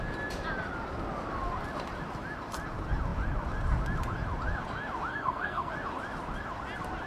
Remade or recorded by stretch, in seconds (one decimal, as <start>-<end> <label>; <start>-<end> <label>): 0.0-5.1 recorded; 5.1-5.7 remade; 5.7-7.1 recorded